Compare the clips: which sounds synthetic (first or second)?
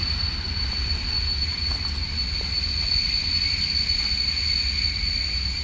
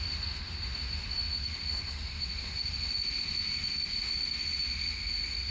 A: second